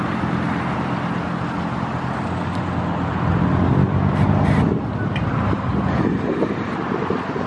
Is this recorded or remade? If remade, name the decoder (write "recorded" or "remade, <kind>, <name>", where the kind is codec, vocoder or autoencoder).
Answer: recorded